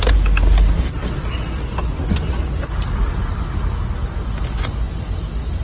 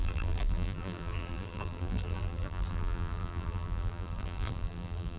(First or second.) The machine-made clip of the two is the second